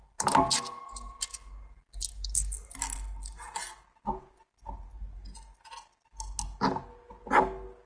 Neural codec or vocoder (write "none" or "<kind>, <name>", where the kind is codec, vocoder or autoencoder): none